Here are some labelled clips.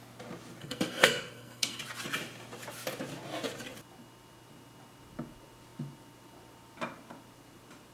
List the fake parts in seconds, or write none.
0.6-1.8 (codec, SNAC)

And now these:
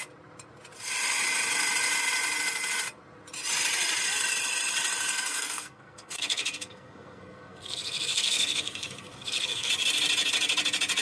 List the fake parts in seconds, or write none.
5.1-9.7 (codec, SNAC)

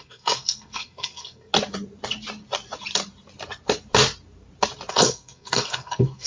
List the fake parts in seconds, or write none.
0.0-1.5 (codec, SNAC); 4.9-6.3